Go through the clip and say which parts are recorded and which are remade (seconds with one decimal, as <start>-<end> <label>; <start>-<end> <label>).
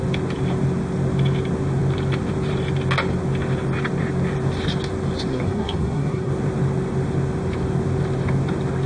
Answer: 0.0-5.3 recorded; 5.3-6.3 remade; 6.3-8.9 recorded